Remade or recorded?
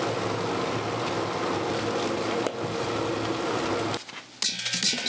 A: recorded